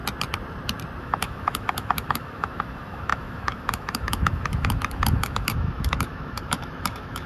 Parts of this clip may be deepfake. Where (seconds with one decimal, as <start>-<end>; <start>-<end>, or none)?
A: 1.0-7.3